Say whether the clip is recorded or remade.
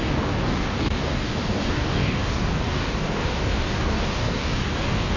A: remade